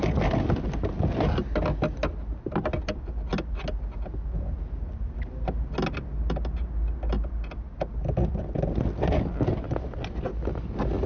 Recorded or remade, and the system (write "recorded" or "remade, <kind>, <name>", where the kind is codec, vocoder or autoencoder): recorded